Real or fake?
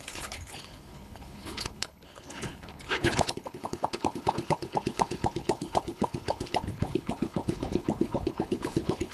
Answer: fake